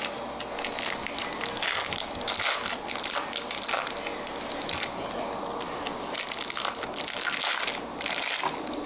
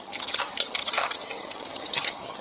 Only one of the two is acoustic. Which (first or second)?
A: first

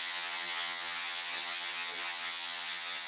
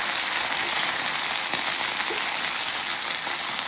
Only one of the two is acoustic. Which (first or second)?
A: second